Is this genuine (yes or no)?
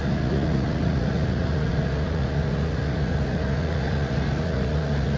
no